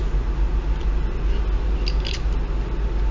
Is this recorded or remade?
recorded